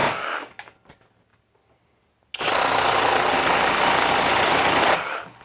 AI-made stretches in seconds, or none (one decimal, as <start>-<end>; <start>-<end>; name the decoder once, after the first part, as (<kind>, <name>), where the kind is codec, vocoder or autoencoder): 0.0-0.5 (codec, DAC)